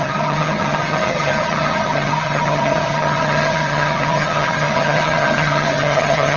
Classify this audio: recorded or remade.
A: remade